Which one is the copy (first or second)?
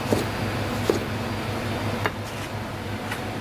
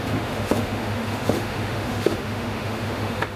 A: second